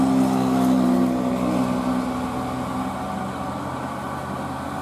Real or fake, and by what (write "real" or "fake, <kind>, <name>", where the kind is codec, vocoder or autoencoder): real